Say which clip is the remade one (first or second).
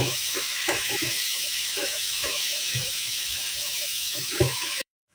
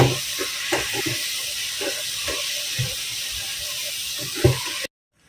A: first